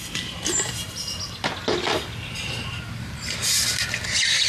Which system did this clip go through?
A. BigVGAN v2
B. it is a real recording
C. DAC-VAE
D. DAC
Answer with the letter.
B